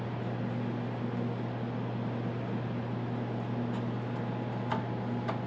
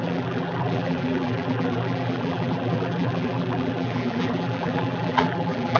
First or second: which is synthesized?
second